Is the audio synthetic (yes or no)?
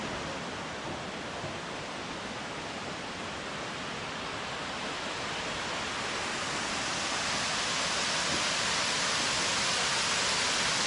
no